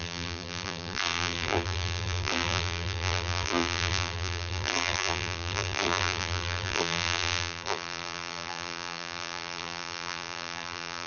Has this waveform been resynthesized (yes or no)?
yes